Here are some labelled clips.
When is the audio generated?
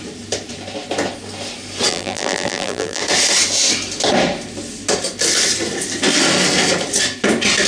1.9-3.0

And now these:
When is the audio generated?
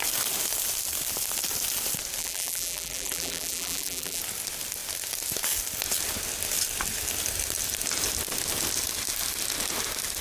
2.2-4.2